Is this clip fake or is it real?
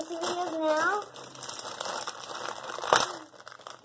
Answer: real